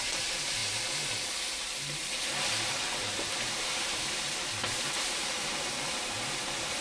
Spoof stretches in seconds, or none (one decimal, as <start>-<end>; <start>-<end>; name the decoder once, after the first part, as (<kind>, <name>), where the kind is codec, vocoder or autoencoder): 0.0-0.6 (vocoder, BigVGAN v2); 2.4-6.8